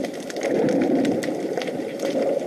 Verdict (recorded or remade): recorded